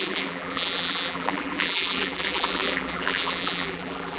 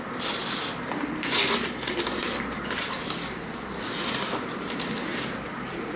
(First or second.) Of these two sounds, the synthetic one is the first